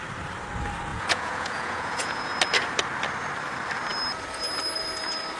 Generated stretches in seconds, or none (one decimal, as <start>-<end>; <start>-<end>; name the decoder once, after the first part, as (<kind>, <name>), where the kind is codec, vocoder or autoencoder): 0.9-2.3 (vocoder, Vocos)